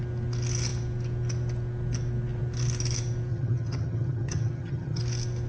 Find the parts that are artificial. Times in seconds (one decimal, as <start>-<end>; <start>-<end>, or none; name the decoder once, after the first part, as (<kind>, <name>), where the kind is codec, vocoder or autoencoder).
3.3-5.0 (vocoder, HiFi-GAN)